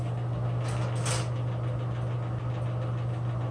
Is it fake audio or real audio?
real